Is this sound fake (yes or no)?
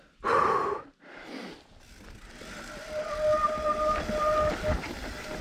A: no